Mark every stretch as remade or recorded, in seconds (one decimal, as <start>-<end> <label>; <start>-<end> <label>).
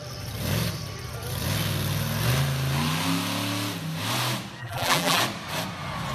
0.0-4.6 recorded; 4.6-5.2 remade; 5.2-6.1 recorded